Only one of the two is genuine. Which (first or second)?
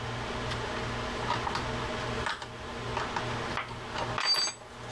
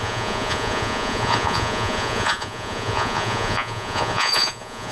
first